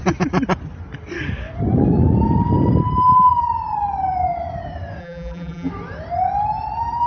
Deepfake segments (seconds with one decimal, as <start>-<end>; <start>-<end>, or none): 5.0-5.7